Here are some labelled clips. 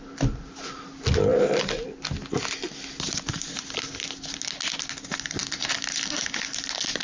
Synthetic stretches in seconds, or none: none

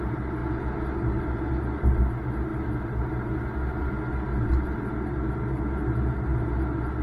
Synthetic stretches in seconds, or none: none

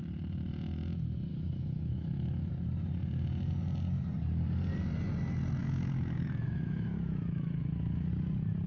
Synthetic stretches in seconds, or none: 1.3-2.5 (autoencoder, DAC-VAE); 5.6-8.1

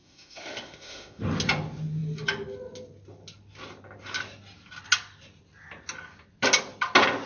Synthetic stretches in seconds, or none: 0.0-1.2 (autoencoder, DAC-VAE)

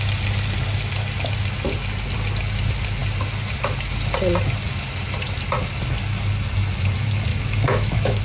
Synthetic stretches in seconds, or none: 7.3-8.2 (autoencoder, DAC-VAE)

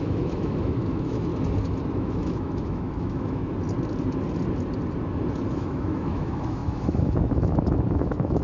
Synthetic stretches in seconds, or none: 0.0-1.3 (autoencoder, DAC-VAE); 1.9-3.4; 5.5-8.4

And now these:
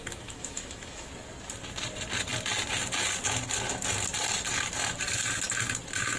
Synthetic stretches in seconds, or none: 0.0-1.1 (autoencoder, DAC-VAE)